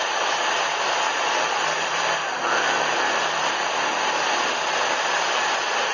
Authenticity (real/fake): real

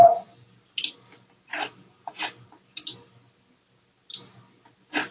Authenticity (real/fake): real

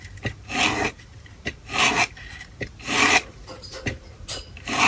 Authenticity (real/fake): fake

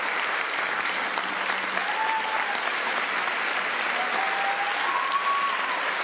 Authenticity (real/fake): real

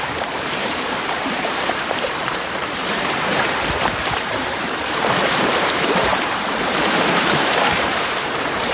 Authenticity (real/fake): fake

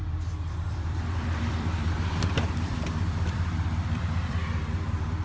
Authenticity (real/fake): fake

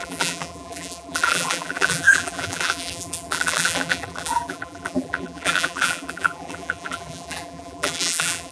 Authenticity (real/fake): fake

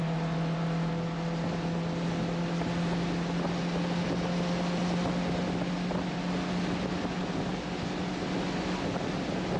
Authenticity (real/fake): real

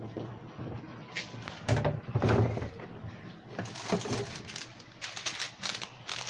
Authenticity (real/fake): real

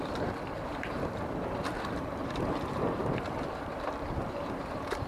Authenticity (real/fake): fake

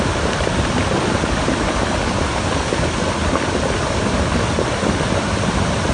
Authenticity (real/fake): fake